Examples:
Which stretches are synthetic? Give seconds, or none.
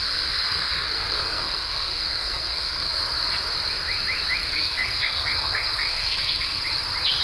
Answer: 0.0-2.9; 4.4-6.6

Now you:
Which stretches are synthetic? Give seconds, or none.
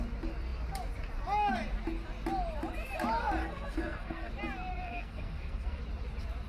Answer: 3.4-4.3; 4.7-5.8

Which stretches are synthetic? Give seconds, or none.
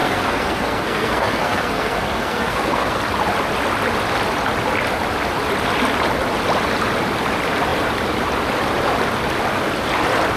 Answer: 0.0-3.0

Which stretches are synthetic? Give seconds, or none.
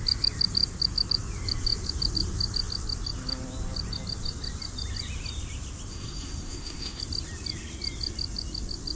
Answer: 5.9-7.0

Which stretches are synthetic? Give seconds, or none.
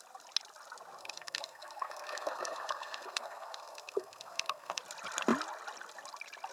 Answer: 1.0-4.8